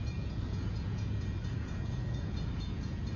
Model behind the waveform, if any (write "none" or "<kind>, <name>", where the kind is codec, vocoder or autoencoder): vocoder, Vocos